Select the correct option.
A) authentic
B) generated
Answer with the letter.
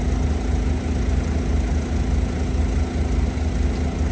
A